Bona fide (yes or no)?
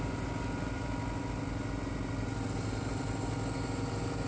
yes